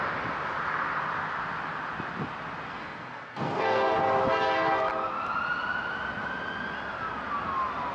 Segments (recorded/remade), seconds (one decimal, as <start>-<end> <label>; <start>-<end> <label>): 0.0-2.7 recorded; 2.7-4.0 remade; 4.0-7.9 recorded